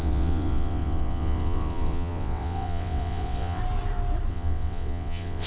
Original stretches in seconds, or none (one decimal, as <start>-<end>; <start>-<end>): 3.6-4.3